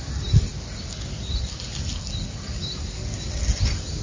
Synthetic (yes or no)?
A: no